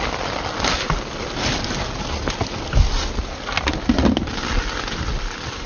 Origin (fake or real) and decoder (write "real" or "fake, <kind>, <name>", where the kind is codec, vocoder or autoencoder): real